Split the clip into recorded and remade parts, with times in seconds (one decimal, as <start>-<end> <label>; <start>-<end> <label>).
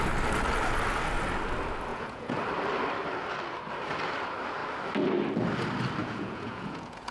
0.0-1.9 recorded; 1.9-2.4 remade; 2.4-6.0 recorded; 6.0-7.1 remade